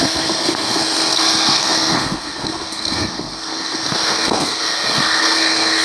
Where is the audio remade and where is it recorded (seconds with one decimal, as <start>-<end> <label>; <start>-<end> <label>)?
0.0-5.8 remade